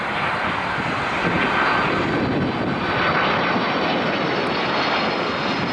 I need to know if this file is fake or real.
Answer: real